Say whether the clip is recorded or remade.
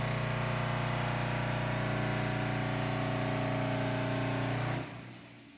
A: recorded